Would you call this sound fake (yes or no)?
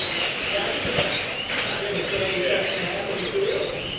no